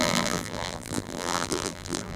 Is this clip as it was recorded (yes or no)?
no